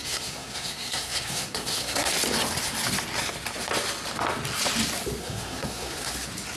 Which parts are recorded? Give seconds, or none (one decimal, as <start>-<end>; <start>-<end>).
2.1-5.2; 6.1-6.6